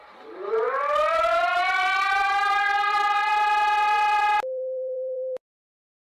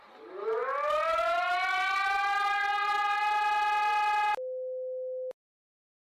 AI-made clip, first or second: first